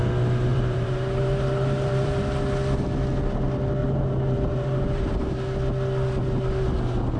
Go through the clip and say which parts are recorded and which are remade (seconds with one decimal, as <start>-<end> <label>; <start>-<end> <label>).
0.0-0.5 recorded; 0.5-2.2 remade; 2.2-3.8 recorded; 3.8-5.2 remade; 5.2-7.2 recorded